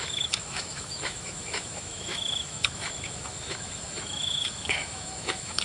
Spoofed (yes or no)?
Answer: yes